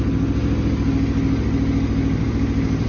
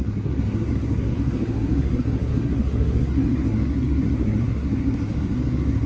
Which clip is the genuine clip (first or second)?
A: first